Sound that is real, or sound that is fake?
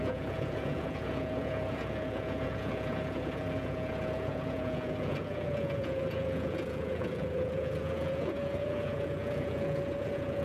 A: fake